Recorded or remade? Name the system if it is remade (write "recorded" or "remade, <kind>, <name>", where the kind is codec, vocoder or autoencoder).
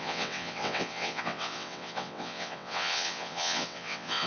remade, vocoder, WaveNeXt